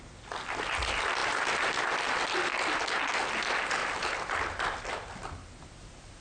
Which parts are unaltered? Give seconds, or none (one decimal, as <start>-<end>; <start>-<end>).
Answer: 0.0-3.8